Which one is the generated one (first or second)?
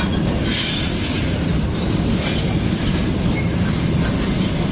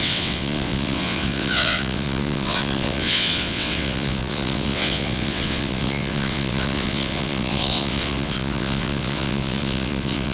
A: second